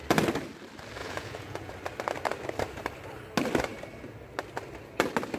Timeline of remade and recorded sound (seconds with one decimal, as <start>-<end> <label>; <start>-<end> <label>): 0.0-1.0 recorded; 1.0-1.7 remade; 1.7-5.4 recorded